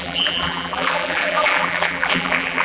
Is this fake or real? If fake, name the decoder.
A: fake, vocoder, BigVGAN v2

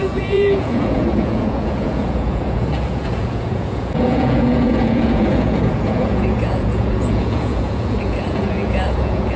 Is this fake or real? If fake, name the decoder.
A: fake, vocoder, Vocos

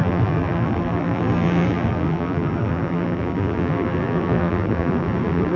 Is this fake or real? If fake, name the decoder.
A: fake, vocoder, BigVGAN v2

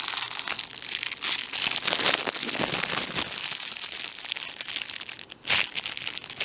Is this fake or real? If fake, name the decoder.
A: real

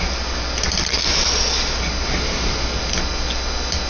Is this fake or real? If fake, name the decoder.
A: real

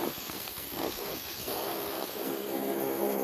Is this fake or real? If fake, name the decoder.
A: fake, codec, SNAC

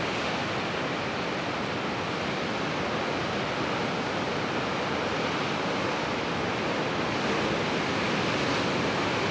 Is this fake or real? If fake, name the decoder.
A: real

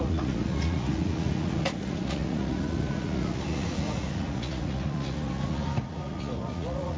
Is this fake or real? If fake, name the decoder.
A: fake, vocoder, Vocos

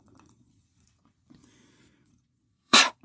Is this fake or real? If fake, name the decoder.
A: fake, vocoder, Vocos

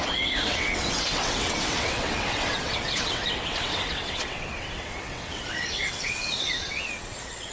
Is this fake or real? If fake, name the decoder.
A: fake, vocoder, WaveNeXt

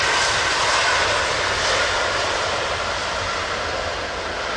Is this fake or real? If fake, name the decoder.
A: real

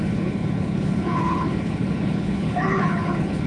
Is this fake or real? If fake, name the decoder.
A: fake, codec, HILCodec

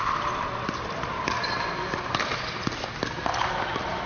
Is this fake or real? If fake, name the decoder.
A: real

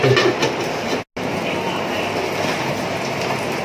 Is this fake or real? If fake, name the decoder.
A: real